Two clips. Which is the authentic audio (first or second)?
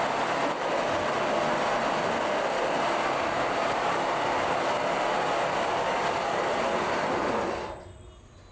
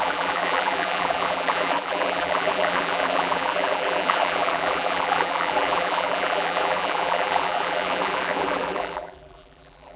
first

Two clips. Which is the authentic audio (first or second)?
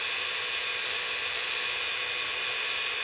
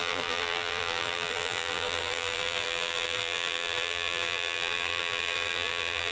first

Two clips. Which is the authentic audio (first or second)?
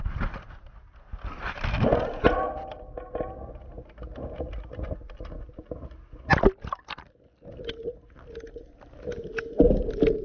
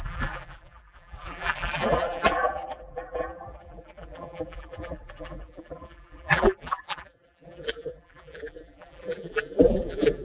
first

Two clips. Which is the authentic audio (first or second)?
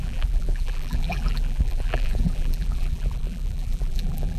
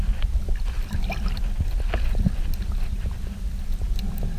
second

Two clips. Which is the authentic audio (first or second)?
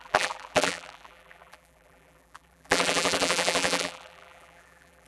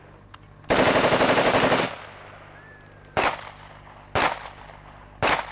second